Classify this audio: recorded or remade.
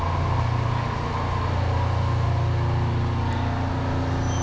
recorded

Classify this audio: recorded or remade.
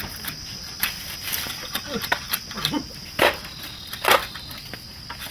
recorded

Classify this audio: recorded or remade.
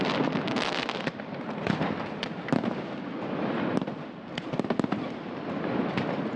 recorded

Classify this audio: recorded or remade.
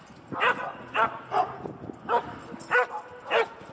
recorded